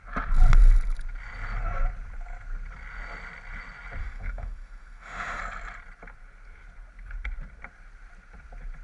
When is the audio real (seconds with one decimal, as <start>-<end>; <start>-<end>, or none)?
0.0-4.0; 5.4-8.8